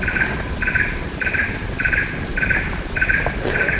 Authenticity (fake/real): real